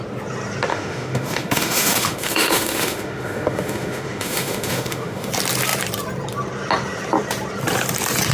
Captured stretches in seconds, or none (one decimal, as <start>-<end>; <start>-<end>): 0.0-0.7; 5.3-8.3